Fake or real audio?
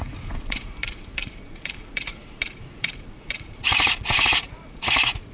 fake